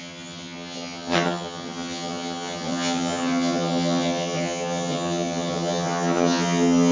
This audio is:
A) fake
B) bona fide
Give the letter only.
A